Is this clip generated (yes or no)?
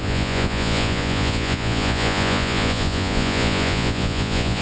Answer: yes